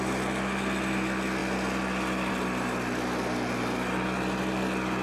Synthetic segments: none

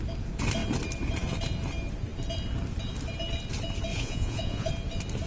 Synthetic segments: 3.9-4.7 (vocoder, Vocos)

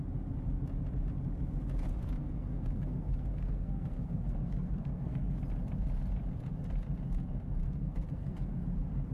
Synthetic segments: 2.2-5.4 (codec, SNAC); 7.6-8.6

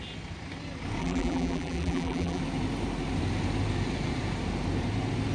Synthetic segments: 1.0-2.4 (vocoder, BigVGAN v2)

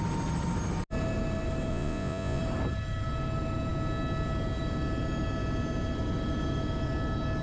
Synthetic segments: 1.7-2.4 (vocoder, Vocos)

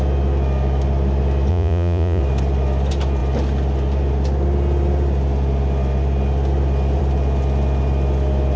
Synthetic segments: 1.5-2.2 (vocoder, Vocos)

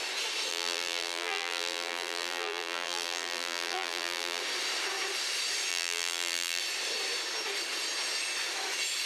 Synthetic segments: 0.5-4.4 (vocoder, BigVGAN v2); 5.7-6.6

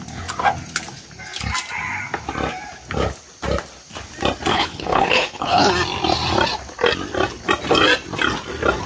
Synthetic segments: 4.5-5.7 (codec, HILCodec)